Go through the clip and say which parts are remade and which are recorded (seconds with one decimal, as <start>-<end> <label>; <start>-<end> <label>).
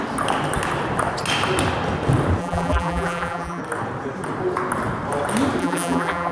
0.0-2.4 recorded; 2.4-3.6 remade; 3.6-5.6 recorded; 5.6-6.3 remade